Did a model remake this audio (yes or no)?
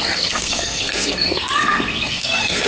yes